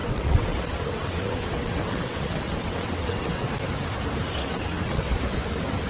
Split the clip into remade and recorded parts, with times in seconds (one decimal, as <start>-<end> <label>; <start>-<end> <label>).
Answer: 0.0-3.5 remade; 3.5-4.5 recorded; 4.5-5.2 remade; 5.2-5.9 recorded